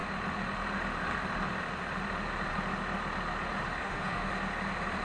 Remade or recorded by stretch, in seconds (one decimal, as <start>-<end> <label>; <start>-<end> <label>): 0.0-3.8 recorded; 3.8-4.3 remade; 4.3-5.0 recorded